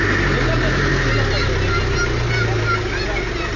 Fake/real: real